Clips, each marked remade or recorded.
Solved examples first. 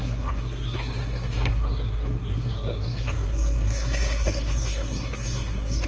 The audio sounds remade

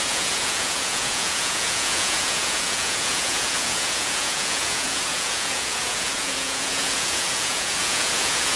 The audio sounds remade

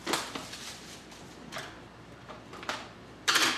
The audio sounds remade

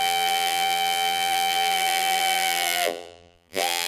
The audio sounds remade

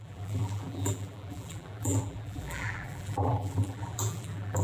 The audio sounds remade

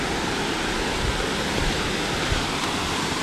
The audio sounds recorded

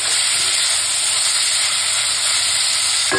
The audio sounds recorded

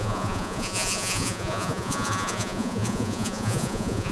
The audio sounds remade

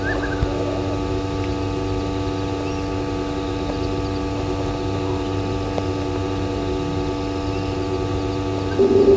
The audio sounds recorded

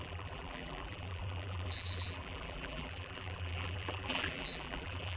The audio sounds remade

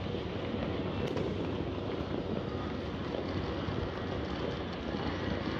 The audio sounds recorded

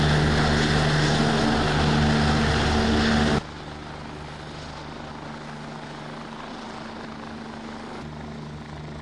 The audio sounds recorded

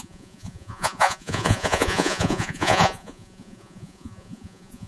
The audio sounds remade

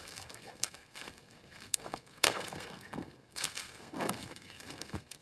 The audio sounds remade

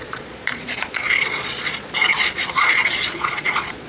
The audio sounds remade